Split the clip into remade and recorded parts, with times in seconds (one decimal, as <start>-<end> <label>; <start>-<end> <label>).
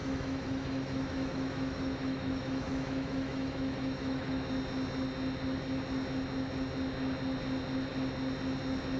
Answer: 0.0-4.5 remade; 4.5-9.0 recorded